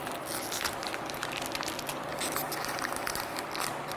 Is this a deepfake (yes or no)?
no